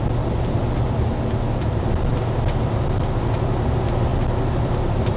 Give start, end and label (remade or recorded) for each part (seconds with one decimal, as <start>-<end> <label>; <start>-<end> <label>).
0.0-5.2 recorded

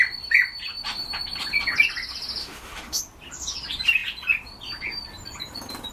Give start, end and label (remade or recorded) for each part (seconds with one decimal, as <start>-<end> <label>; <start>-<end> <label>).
0.0-2.4 recorded; 2.4-3.0 remade; 3.0-5.9 recorded